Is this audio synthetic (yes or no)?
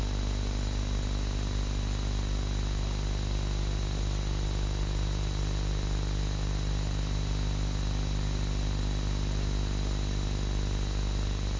no